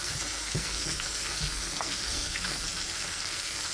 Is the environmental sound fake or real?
fake